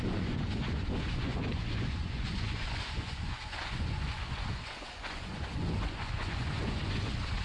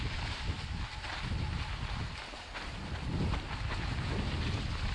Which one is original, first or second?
second